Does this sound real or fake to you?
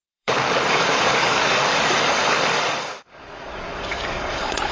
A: fake